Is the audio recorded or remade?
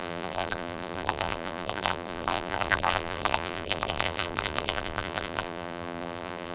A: remade